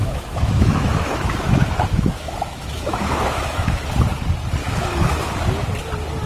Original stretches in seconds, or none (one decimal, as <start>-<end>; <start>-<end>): 3.8-4.6; 5.3-6.3